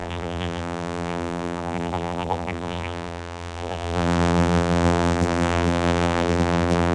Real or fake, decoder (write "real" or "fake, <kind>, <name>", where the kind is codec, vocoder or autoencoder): fake, vocoder, BigVGAN v2